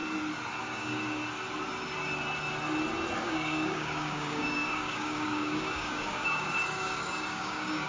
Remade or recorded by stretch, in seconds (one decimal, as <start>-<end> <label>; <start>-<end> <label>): 0.0-0.6 recorded; 0.6-1.2 remade; 1.2-3.2 recorded; 3.2-7.9 remade